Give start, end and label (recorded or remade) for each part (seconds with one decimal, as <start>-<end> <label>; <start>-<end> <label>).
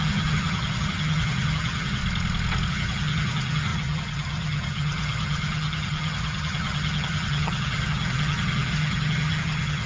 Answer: 0.0-2.0 remade; 2.0-2.7 recorded; 2.7-9.9 remade